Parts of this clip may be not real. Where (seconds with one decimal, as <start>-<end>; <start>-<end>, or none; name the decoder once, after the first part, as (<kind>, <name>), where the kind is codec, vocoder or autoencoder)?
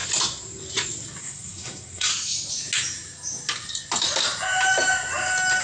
1.2-2.1 (codec, SNAC)